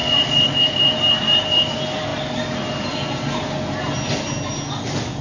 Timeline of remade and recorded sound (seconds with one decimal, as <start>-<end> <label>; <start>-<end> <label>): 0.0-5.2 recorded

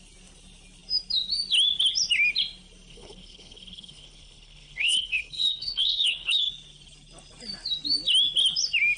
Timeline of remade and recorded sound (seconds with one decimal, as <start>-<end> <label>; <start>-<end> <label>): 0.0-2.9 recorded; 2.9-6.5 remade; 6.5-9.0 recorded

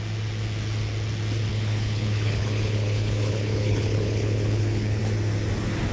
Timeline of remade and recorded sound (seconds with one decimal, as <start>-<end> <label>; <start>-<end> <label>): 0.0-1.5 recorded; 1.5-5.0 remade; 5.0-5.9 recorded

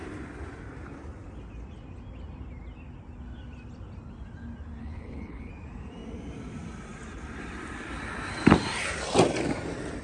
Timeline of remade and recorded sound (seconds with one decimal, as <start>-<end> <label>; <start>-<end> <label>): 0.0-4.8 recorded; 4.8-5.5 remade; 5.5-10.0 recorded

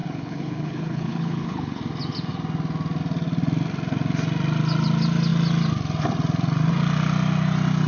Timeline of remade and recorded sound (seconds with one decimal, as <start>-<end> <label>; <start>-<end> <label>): 0.0-1.8 remade; 1.8-7.9 recorded

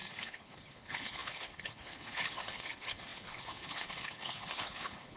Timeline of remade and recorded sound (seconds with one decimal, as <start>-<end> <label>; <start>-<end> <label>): 0.0-5.2 remade